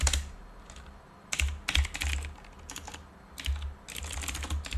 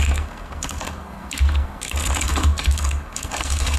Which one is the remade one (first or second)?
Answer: second